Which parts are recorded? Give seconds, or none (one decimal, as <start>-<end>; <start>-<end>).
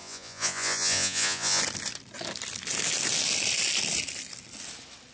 1.6-5.1